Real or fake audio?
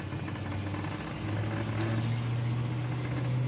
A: real